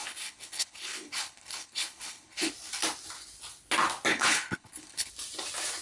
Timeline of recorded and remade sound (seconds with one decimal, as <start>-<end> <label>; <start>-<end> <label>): 0.0-2.5 remade; 2.5-4.1 recorded; 4.1-5.1 remade; 5.1-5.8 recorded